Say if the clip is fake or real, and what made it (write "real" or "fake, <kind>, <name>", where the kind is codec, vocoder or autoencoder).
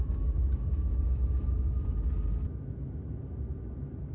real